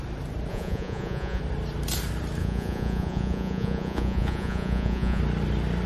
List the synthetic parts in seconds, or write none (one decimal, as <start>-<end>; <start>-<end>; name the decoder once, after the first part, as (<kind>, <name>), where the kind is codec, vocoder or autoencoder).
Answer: 0.5-1.4 (vocoder, Vocos); 2.4-5.2